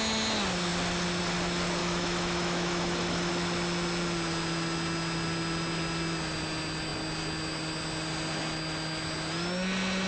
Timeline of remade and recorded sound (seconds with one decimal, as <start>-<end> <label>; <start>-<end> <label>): 0.0-1.8 recorded; 1.8-3.3 remade; 3.3-10.1 recorded